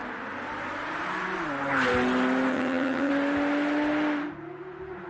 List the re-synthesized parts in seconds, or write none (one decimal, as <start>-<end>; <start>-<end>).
2.5-3.1